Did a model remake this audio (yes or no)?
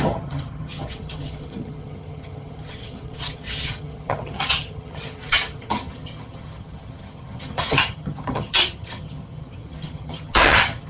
yes